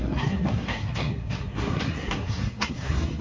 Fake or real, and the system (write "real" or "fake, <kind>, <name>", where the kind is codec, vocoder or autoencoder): fake, codec, SNAC